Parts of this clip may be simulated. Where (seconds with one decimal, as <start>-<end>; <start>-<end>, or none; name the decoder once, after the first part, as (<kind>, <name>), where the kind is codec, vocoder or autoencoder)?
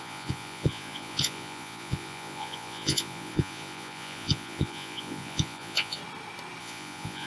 0.0-6.0 (vocoder, Vocos); 6.6-7.3